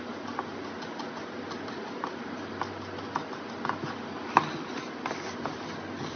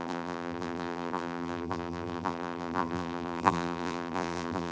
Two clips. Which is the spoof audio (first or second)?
second